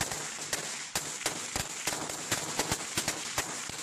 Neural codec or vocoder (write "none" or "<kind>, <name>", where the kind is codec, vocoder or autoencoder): none